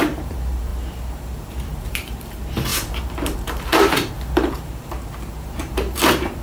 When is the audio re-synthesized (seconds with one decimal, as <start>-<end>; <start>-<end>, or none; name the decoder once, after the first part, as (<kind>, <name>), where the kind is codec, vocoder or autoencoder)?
0.0-0.7 (vocoder, BigVGAN v2); 1.9-6.4